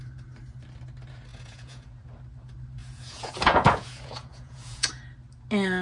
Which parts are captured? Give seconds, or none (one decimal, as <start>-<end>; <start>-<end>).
0.0-1.3; 2.0-2.8; 4.9-5.8